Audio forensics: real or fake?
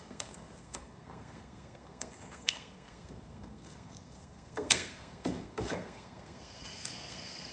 fake